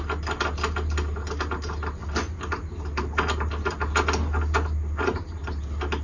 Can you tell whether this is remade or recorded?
recorded